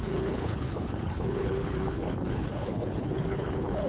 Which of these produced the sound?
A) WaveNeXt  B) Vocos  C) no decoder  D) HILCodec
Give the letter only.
D